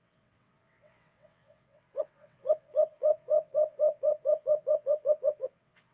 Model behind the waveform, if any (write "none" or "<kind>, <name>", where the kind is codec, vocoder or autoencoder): vocoder, WaveNeXt